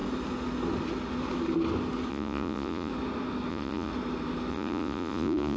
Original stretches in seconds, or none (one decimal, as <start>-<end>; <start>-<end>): 0.0-2.1; 2.9-3.5; 3.9-4.5